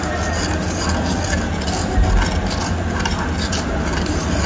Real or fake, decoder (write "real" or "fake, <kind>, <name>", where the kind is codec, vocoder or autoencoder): real